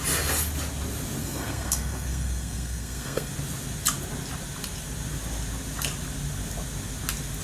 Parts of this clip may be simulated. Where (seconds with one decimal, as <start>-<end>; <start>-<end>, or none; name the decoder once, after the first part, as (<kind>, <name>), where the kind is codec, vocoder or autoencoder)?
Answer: 1.2-3.3 (codec, SNAC)